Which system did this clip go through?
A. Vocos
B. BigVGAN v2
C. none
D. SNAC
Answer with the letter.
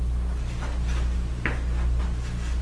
C